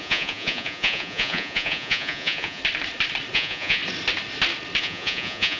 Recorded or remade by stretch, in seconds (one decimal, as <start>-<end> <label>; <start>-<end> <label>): 0.0-2.6 remade; 2.6-3.3 recorded; 3.3-3.8 remade; 3.8-4.8 recorded; 4.8-5.6 remade